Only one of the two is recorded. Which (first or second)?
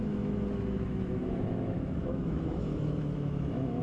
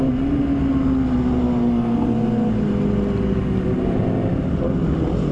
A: second